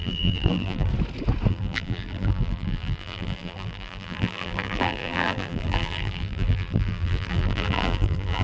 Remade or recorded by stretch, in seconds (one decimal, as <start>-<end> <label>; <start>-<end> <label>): 0.0-0.9 remade; 0.9-1.5 recorded; 1.5-8.4 remade